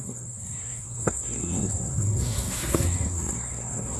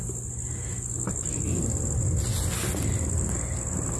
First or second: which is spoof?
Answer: first